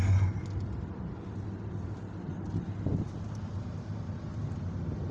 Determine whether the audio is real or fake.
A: real